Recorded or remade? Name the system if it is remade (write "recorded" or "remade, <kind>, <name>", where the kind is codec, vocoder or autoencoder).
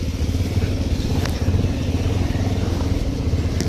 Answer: recorded